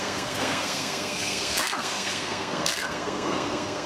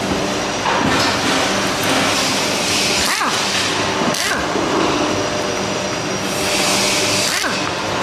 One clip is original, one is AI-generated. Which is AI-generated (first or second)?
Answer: first